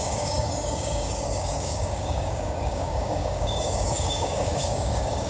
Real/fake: fake